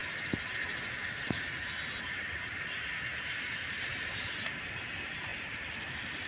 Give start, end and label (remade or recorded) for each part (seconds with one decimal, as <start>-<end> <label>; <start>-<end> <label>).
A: 0.0-1.5 remade; 1.5-3.1 recorded; 3.1-4.3 remade; 4.3-5.3 recorded; 5.3-6.3 remade